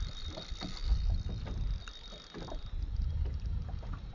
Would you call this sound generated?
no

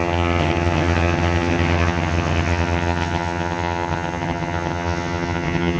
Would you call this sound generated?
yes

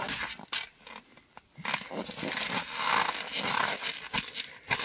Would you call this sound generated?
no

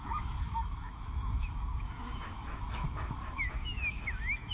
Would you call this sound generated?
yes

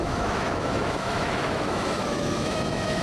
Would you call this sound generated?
yes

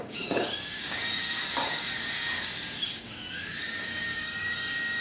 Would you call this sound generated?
yes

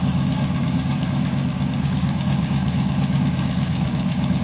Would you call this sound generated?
yes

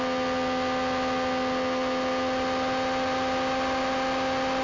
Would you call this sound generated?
no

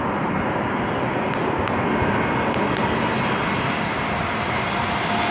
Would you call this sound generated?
no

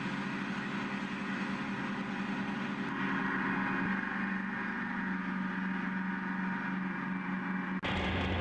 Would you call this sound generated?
no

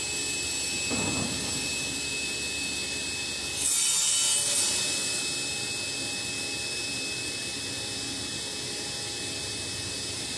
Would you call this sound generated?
no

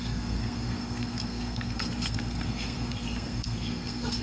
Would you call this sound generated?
yes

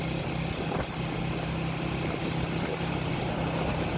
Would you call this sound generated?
no